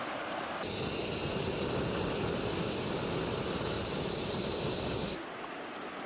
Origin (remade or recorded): recorded